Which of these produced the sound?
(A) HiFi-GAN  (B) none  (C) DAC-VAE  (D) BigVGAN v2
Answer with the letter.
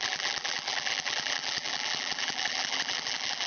D